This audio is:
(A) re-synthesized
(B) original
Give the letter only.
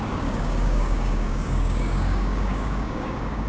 A